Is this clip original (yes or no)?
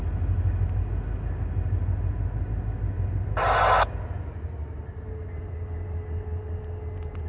yes